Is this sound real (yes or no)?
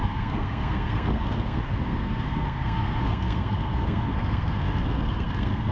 no